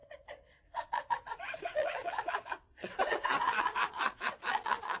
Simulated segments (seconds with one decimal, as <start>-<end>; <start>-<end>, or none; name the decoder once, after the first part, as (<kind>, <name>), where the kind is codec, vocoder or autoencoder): 0.0-5.0 (vocoder, WaveNeXt)

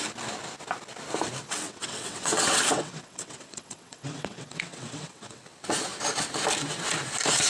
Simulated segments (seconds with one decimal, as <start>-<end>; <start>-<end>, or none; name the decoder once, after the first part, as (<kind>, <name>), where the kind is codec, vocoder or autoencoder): 1.4-5.4 (vocoder, WaveNeXt)

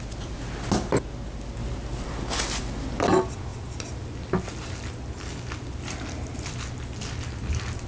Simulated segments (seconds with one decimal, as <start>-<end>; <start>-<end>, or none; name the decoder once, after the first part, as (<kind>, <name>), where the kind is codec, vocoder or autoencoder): none

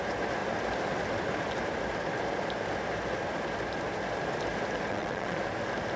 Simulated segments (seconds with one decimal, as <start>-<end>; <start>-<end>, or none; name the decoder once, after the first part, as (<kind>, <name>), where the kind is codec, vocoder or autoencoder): 4.9-5.4 (vocoder, WaveNeXt)

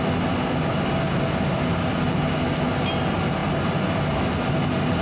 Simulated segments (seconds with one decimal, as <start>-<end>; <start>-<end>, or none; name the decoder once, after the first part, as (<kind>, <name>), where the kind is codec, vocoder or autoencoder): none

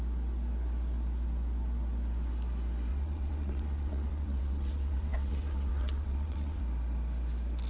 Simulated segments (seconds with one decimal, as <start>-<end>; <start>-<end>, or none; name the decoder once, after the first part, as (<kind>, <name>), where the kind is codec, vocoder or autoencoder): 2.9-6.6 (vocoder, WaveNeXt)

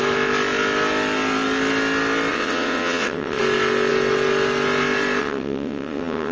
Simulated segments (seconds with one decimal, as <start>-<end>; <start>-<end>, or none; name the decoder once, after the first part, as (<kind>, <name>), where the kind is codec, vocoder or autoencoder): 2.3-3.4 (vocoder, WaveNeXt); 5.2-6.3

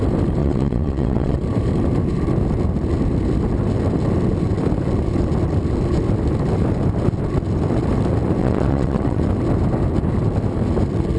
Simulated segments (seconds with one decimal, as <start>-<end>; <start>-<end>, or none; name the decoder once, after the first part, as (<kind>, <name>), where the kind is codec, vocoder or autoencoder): 0.4-1.4 (vocoder, WaveNeXt); 8.4-9.2